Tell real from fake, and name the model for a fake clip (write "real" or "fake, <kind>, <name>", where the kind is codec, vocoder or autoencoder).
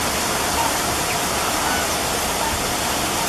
real